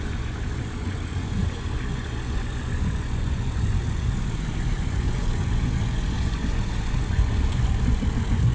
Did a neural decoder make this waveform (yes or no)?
yes